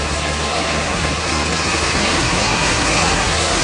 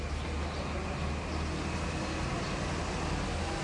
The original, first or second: second